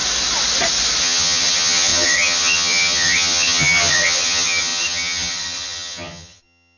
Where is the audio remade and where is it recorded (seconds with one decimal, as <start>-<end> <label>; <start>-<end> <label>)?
0.0-1.0 recorded; 1.0-6.8 remade